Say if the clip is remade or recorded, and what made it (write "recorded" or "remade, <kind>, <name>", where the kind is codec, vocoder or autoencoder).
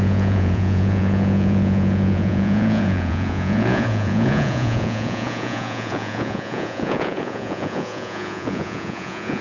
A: remade, vocoder, Vocos